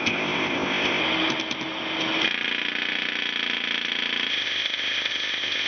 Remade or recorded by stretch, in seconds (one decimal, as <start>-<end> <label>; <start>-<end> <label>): 0.0-1.0 remade; 1.0-4.3 recorded; 4.3-5.7 remade